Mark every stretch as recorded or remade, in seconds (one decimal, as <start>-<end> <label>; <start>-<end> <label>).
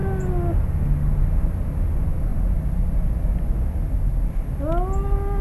0.0-5.4 recorded